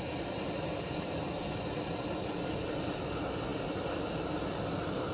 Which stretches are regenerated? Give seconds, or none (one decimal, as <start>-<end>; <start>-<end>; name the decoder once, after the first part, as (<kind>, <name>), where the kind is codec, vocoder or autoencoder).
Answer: none